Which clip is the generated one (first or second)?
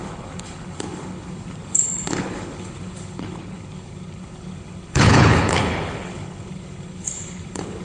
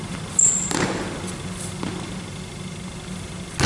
first